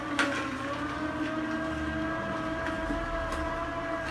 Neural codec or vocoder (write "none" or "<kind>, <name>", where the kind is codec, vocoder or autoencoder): none